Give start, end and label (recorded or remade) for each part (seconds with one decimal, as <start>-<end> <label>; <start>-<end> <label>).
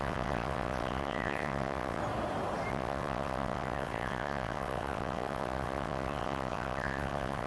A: 0.0-2.0 remade; 2.0-2.7 recorded; 2.7-7.5 remade